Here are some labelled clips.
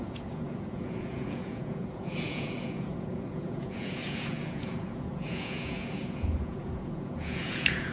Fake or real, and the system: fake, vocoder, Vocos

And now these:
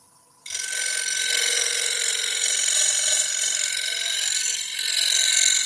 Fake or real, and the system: real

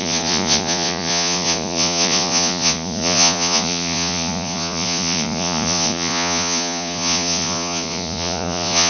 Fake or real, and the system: fake, vocoder, Vocos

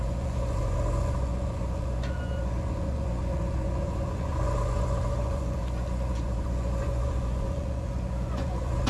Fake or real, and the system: fake, vocoder, Vocos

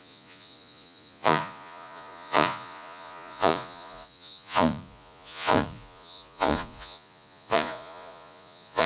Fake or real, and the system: fake, vocoder, Vocos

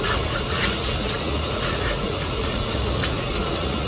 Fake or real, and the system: fake, vocoder, Vocos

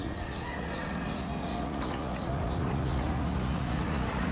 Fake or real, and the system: fake, vocoder, Vocos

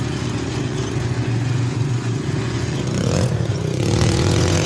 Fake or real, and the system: fake, vocoder, Vocos